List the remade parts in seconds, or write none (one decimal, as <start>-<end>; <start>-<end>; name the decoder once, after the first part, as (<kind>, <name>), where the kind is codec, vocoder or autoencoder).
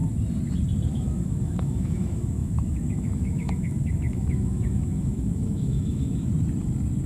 0.9-6.3 (autoencoder, DAC-VAE)